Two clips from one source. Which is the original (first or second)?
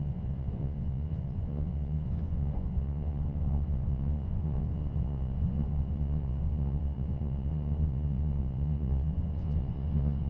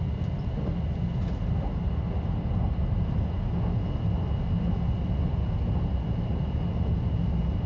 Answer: second